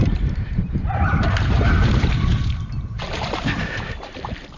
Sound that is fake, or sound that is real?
fake